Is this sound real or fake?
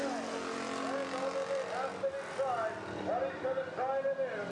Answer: real